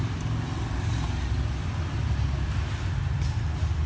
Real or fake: real